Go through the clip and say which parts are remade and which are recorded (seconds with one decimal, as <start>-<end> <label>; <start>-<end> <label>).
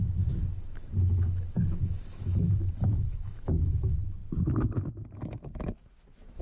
0.0-4.2 remade; 4.2-5.1 recorded; 5.1-6.4 remade